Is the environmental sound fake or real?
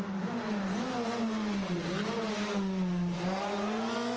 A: real